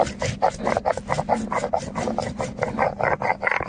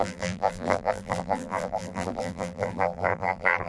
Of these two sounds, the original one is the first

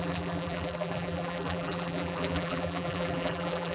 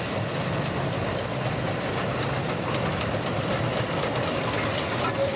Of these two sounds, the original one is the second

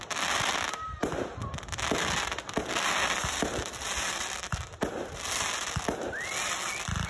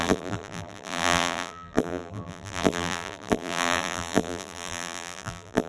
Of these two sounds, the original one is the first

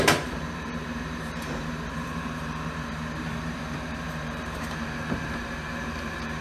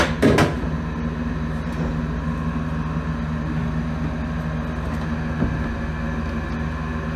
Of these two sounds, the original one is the second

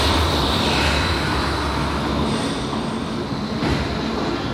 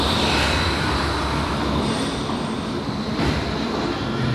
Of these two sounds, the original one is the first